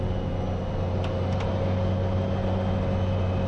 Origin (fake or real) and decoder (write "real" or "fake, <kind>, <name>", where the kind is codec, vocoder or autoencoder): real